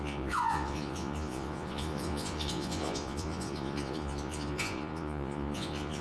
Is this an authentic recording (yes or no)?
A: no